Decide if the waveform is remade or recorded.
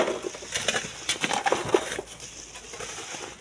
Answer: recorded